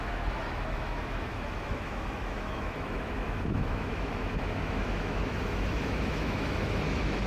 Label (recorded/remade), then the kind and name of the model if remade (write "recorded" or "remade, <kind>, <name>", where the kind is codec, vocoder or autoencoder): remade, autoencoder, DAC-VAE